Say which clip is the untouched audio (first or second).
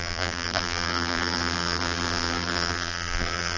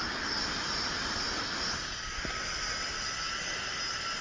second